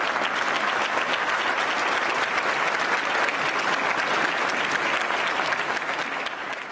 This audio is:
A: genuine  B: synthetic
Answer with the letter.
A